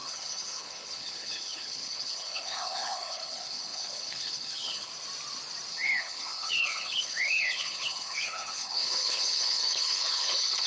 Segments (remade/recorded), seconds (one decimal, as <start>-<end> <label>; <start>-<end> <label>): 0.0-4.9 remade; 4.9-5.7 recorded; 5.7-10.7 remade